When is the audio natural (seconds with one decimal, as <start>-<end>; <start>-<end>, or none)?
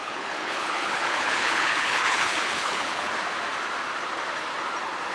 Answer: 3.1-5.1